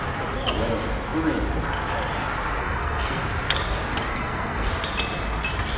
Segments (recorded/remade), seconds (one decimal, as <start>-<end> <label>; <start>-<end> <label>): 0.0-2.6 recorded; 2.6-3.2 remade; 3.2-4.1 recorded; 4.1-4.7 remade; 4.7-5.8 recorded